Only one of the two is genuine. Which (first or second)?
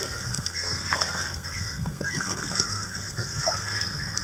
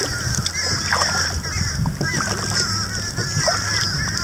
second